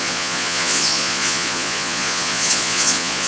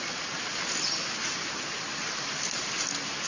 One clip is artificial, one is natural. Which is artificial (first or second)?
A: first